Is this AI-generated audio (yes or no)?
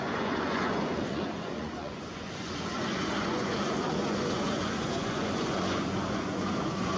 yes